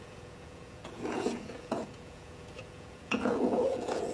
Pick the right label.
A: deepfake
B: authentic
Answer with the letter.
A